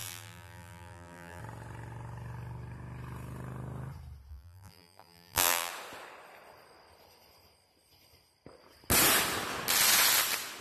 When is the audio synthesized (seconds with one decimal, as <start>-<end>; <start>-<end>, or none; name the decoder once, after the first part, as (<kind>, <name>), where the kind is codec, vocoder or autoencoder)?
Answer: 0.0-1.4 (vocoder, BigVGAN v2); 4.3-5.7